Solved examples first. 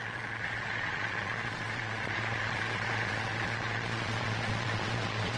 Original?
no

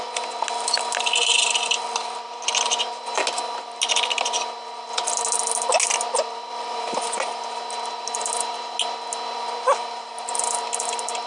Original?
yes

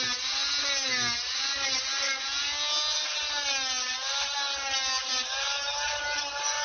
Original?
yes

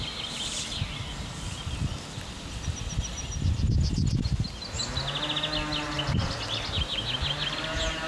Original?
yes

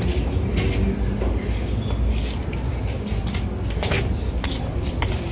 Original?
yes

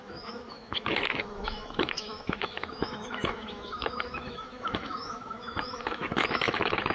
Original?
no